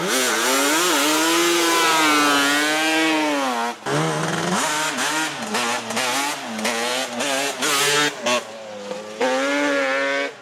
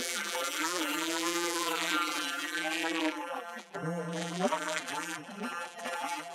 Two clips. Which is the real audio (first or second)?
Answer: first